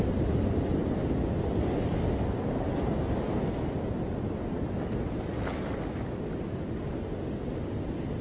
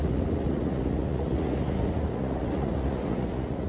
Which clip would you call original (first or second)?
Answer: first